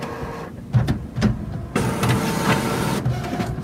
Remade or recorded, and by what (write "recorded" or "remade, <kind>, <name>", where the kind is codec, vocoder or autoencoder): recorded